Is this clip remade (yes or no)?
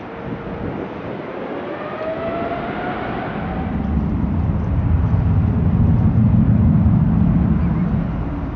no